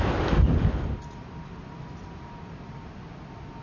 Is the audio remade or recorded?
recorded